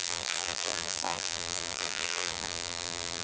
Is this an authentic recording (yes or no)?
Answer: no